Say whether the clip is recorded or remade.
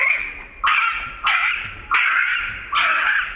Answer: recorded